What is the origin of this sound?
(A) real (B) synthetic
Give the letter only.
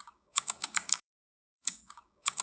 B